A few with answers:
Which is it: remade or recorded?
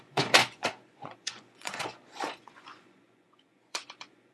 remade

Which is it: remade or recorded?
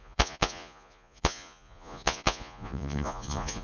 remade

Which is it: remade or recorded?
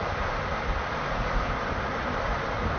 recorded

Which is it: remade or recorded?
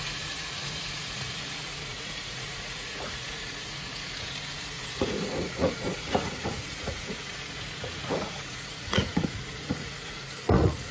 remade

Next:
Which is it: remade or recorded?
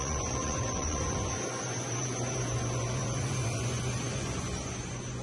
remade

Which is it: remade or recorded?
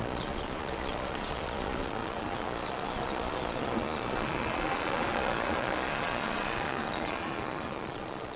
remade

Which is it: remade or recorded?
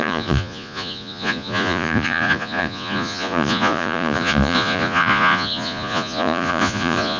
remade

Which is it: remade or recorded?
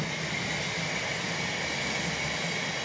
recorded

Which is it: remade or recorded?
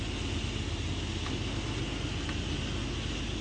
recorded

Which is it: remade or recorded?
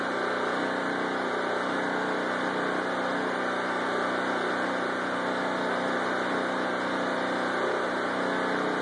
recorded